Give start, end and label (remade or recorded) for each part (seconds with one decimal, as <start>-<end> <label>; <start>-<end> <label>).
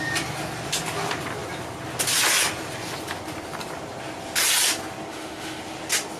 0.0-5.1 recorded; 5.1-5.6 remade; 5.6-6.2 recorded